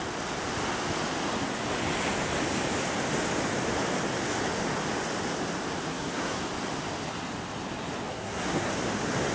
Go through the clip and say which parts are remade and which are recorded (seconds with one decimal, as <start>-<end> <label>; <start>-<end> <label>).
0.0-5.9 recorded; 5.9-6.4 remade; 6.4-8.1 recorded; 8.1-8.7 remade; 8.7-9.3 recorded